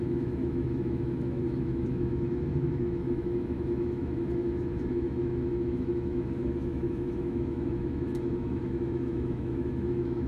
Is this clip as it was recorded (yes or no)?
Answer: no